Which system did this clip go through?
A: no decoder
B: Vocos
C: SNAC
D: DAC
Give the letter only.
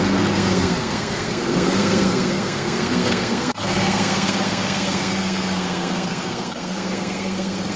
C